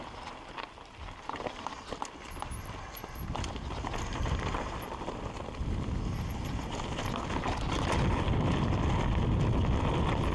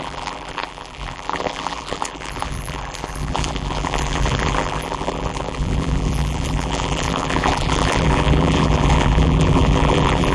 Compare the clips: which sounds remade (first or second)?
second